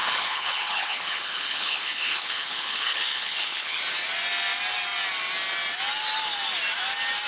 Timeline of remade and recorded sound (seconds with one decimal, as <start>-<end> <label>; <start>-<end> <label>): 0.0-3.8 remade; 3.8-7.3 recorded